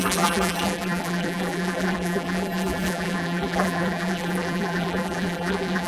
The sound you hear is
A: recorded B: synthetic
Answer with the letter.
B